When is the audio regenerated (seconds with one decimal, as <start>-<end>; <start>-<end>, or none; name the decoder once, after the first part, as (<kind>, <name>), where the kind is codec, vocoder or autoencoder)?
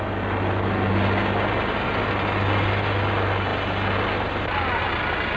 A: none